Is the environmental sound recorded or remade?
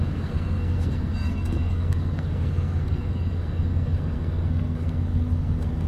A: remade